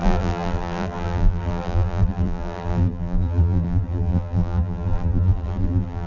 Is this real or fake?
fake